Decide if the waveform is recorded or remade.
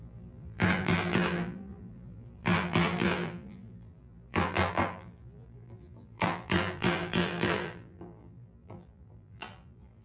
remade